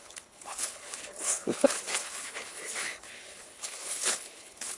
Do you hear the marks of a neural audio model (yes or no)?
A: yes